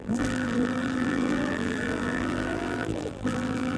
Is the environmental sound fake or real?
fake